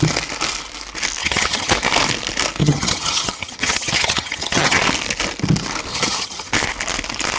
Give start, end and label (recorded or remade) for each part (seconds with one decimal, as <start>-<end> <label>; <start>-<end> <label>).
0.0-1.2 recorded; 1.2-1.7 remade; 1.7-2.6 recorded; 2.6-4.8 remade; 4.8-5.9 recorded; 5.9-6.5 remade; 6.5-7.4 recorded